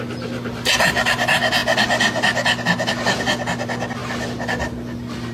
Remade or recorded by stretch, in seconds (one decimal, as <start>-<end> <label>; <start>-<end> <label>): 0.0-5.3 recorded